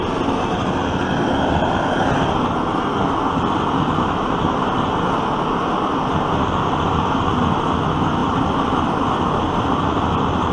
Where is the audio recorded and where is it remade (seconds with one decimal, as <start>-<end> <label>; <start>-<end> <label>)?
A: 0.0-8.2 recorded; 8.2-9.1 remade; 9.1-10.5 recorded